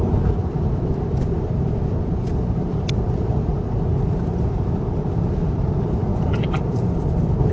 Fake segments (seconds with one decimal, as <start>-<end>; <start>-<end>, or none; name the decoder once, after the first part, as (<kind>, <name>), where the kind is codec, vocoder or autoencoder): 0.4-3.7 (vocoder, BigVGAN v2); 6.1-7.5